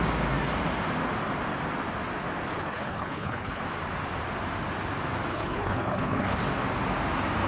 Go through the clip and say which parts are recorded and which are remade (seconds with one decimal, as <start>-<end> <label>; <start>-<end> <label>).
0.0-2.5 recorded; 2.5-3.6 remade; 3.6-5.3 recorded; 5.3-6.4 remade; 6.4-7.5 recorded